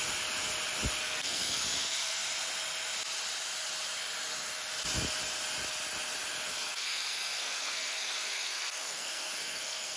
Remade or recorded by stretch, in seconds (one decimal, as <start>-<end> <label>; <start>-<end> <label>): 0.0-1.0 recorded; 1.0-2.2 remade; 2.2-6.5 recorded; 6.5-10.0 remade